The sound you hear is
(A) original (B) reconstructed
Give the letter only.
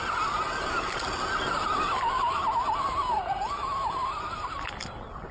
A